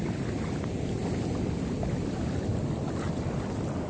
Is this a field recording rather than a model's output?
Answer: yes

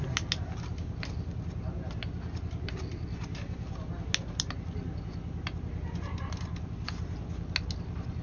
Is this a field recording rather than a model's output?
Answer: yes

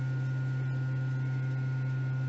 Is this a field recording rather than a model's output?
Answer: yes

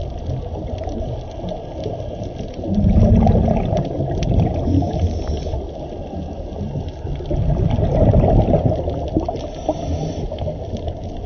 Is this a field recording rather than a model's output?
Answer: yes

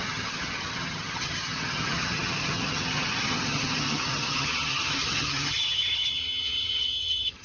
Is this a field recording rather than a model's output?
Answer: no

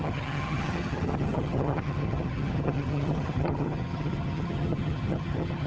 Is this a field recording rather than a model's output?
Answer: no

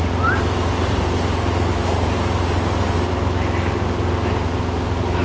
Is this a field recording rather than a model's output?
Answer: yes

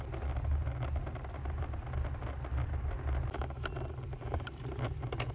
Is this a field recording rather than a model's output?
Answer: yes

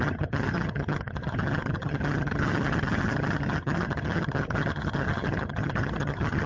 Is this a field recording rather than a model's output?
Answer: no